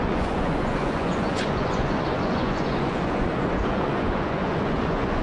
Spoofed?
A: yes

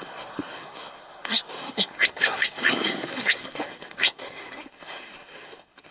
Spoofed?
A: yes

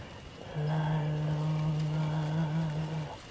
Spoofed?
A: no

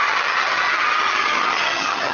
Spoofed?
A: yes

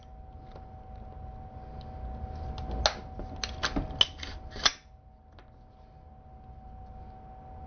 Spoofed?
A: no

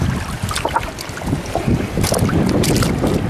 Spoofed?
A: no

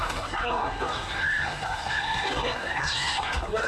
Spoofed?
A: yes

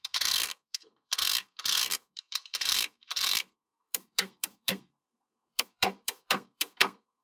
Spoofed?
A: yes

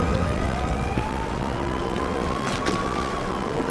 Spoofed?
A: yes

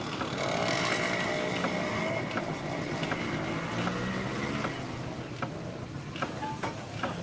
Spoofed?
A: no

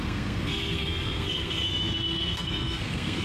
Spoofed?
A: yes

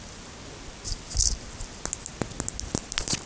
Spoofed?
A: no